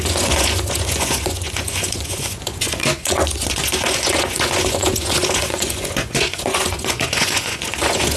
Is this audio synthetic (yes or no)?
yes